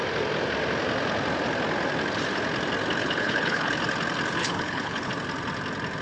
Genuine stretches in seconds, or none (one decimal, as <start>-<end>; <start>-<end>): 0.0-3.0; 3.7-4.4; 5.1-6.0